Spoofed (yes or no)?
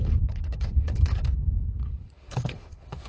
yes